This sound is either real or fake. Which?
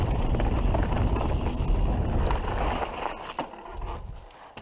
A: real